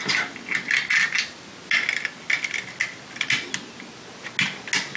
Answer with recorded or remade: recorded